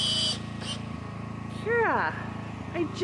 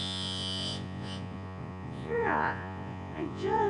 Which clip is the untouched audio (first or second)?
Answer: first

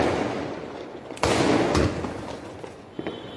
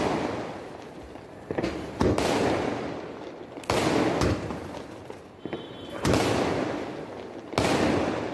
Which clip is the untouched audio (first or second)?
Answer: second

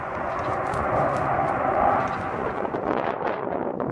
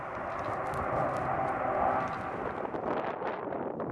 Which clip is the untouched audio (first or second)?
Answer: second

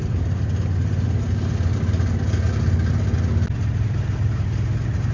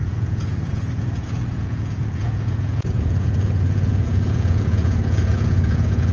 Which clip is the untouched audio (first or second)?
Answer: first